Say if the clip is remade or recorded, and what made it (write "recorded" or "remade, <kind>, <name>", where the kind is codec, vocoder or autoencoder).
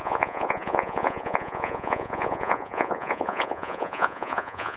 remade, vocoder, Vocos